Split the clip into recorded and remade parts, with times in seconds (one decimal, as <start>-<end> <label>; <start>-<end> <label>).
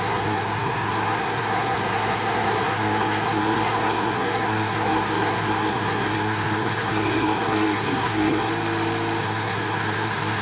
0.0-8.5 remade; 8.5-9.2 recorded; 9.2-10.4 remade